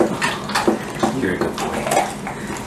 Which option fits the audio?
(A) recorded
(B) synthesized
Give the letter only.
A